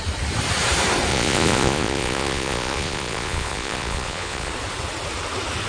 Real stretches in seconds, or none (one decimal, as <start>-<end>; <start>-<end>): 0.0-1.1; 4.5-5.7